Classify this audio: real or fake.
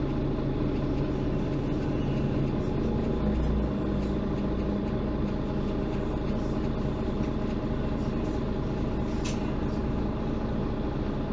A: real